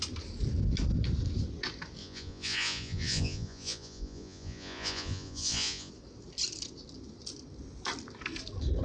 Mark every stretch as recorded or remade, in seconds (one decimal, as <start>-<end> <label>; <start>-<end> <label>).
0.0-2.0 recorded; 2.0-5.9 remade; 5.9-8.8 recorded